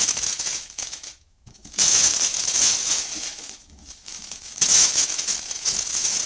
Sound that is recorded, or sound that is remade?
remade